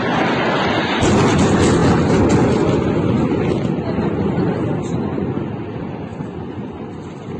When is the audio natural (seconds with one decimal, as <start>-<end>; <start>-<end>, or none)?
0.0-6.1; 7.0-7.4